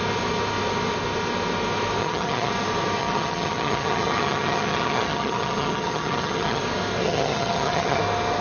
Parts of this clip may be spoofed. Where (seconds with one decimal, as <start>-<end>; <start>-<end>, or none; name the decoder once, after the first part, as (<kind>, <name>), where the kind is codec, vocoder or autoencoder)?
2.0-2.5 (vocoder, HiFi-GAN); 3.0-6.6; 7.0-8.0